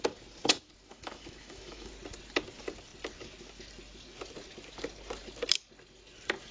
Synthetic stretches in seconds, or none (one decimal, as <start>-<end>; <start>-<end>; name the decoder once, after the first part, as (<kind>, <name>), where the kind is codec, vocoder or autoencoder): 0.9-1.9 (autoencoder, DAC-VAE)